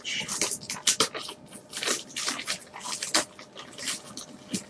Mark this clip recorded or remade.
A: recorded